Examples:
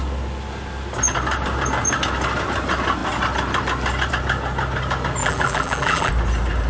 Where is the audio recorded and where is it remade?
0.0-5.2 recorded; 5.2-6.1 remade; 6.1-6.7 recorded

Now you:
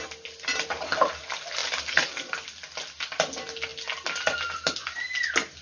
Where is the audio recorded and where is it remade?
0.0-0.5 recorded; 0.5-1.1 remade; 1.1-1.6 recorded; 1.6-2.1 remade; 2.1-5.6 recorded

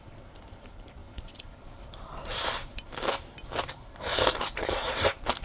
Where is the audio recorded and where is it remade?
0.0-1.0 remade; 1.0-3.6 recorded; 3.6-5.4 remade

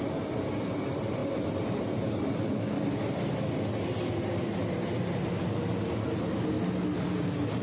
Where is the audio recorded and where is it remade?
0.0-7.6 recorded

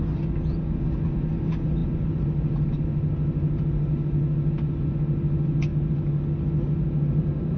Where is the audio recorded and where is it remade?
0.0-7.6 recorded